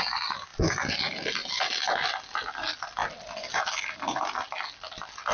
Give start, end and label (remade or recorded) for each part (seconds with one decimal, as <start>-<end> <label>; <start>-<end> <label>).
0.0-5.3 recorded